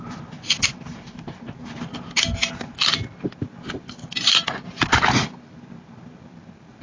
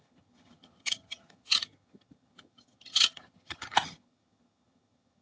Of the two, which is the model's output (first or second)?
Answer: second